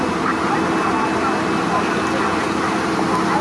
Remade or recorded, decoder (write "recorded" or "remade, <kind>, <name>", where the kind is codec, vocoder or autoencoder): recorded